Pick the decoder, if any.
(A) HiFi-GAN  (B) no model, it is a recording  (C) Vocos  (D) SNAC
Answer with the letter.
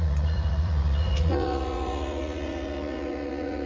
C